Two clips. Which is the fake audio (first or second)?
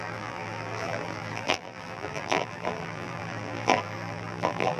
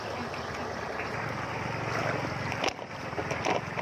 first